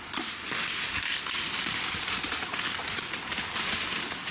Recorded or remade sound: recorded